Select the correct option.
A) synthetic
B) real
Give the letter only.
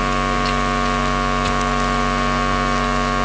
B